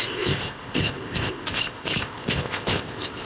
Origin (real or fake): fake